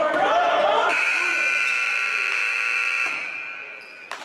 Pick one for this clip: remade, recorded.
remade